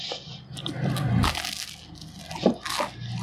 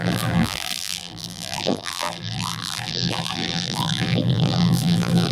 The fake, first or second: second